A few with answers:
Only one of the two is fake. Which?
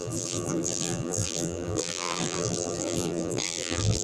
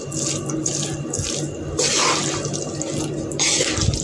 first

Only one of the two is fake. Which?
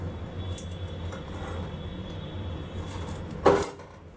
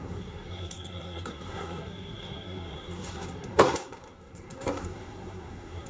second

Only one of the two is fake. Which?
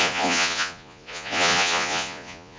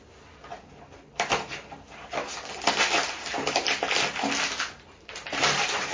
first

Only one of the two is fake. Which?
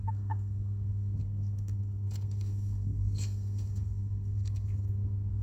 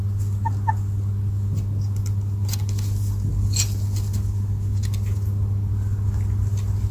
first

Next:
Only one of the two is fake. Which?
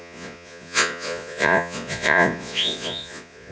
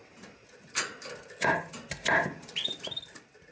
first